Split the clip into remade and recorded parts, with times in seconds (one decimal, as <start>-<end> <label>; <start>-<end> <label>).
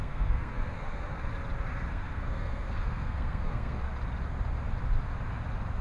0.0-1.3 remade; 1.3-1.9 recorded; 1.9-3.9 remade; 3.9-5.8 recorded